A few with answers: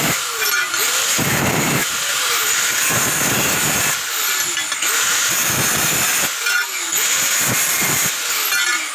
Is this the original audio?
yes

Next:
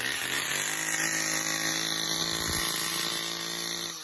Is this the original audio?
yes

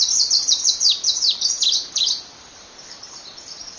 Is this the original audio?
no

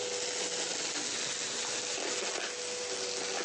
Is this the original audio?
yes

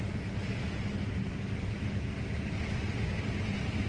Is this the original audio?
yes